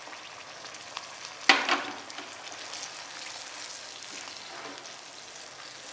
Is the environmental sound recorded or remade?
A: recorded